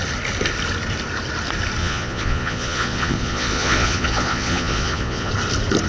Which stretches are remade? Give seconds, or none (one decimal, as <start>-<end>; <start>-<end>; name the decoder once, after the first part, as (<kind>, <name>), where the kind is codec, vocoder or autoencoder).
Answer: 1.8-5.3 (vocoder, Vocos)